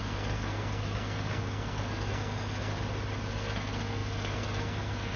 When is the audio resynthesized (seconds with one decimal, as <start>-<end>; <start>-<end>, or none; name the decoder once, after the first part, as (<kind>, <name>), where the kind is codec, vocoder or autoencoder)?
0.0-2.7 (codec, SNAC); 3.3-5.2